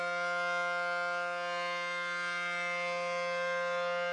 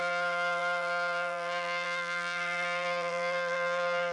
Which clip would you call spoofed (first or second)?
second